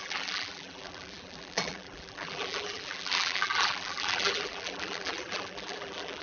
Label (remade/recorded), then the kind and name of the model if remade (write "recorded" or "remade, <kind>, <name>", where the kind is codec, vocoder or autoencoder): remade, vocoder, BigVGAN v2